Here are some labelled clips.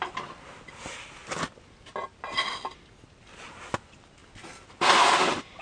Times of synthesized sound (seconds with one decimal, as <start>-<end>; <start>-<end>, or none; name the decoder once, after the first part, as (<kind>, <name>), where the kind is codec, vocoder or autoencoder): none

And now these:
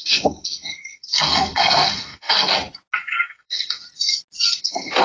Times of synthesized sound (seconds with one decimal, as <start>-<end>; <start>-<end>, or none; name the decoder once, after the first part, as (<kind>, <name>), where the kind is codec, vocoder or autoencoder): 0.0-2.5 (codec, SNAC); 3.2-3.8; 4.6-5.0

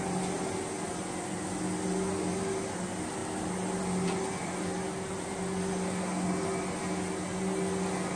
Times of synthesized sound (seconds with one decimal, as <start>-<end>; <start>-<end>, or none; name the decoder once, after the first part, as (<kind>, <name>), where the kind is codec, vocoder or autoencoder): none

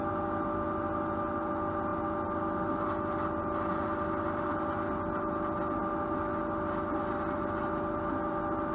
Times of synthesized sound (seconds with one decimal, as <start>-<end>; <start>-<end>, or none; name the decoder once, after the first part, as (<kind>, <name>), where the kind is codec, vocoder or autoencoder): none

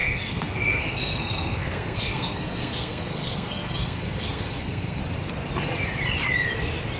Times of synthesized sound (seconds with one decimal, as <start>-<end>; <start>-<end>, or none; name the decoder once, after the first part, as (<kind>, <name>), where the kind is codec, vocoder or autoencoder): 0.0-5.0 (codec, SNAC)

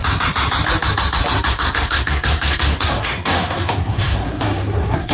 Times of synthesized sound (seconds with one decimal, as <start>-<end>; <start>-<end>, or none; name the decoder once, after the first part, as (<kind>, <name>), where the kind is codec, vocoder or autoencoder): 1.5-5.1 (codec, SNAC)

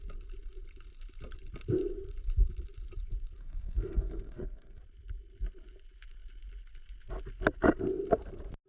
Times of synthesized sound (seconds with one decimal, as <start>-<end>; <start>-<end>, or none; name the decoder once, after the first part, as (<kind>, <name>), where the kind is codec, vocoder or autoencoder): 3.4-4.8 (codec, SNAC)

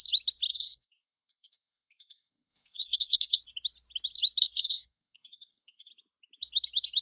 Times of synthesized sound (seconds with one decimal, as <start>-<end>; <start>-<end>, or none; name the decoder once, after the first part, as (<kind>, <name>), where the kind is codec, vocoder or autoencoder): 0.5-3.4 (codec, SNAC); 4.4-5.9